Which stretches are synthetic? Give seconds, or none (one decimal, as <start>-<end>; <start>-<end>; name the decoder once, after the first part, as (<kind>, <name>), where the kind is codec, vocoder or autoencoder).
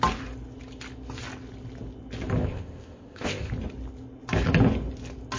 2.4-3.5 (codec, ZipCodec)